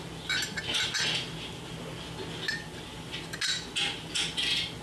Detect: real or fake real